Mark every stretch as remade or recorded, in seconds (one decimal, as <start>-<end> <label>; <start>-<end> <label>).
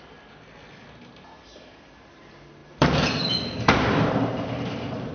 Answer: 0.0-2.6 recorded; 2.6-5.1 remade